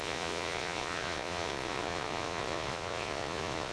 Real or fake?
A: fake